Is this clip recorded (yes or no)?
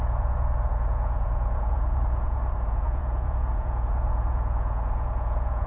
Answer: no